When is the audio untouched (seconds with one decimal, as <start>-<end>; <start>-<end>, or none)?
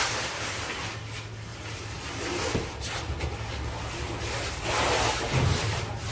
0.0-6.1